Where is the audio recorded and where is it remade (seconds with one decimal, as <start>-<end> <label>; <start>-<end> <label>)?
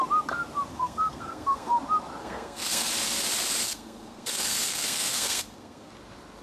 0.0-0.7 recorded; 0.7-1.7 remade; 1.7-2.2 recorded; 2.2-2.9 remade; 2.9-3.6 recorded; 3.6-5.9 remade; 5.9-6.4 recorded